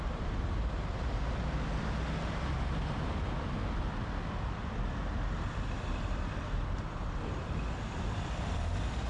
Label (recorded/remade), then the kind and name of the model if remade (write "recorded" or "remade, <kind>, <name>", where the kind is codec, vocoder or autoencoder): recorded